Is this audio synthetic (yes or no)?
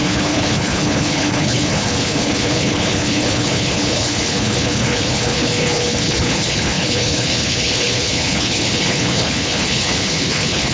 yes